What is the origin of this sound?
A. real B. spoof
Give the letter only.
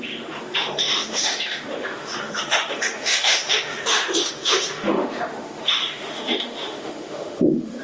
B